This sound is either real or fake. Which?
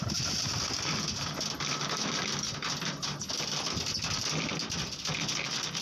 real